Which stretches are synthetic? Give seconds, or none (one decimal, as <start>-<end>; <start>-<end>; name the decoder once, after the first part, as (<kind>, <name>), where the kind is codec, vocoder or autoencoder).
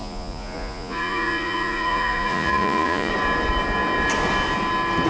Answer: 0.0-3.1 (vocoder, Vocos)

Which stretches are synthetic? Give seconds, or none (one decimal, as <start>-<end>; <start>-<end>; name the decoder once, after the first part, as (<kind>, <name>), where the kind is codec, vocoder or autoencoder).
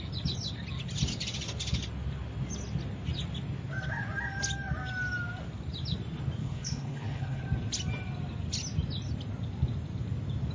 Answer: 6.4-7.4 (codec, HILCodec)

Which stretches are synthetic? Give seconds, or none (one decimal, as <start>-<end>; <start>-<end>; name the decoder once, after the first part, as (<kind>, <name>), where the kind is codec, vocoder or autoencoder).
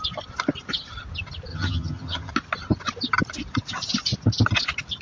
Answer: 1.5-2.3 (vocoder, HiFi-GAN)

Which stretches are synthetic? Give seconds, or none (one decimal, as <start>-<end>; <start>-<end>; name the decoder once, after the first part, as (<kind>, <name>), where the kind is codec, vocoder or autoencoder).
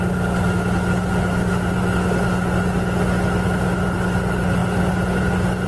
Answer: none